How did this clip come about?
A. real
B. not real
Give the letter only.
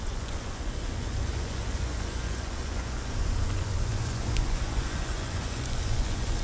B